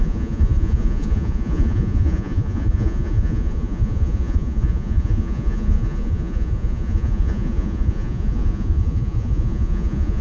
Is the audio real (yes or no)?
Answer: no